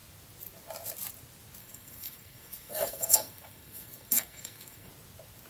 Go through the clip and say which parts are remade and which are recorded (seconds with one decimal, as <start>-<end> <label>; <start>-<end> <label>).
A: 0.0-1.6 recorded; 1.6-4.9 remade; 4.9-5.5 recorded